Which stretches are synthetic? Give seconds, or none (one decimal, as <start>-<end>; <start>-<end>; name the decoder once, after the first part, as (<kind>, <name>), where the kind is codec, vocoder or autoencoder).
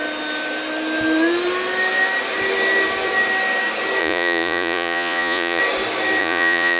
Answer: 4.0-5.6 (vocoder, Vocos); 6.2-6.8